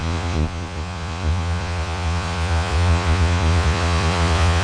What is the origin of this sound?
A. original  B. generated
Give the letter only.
B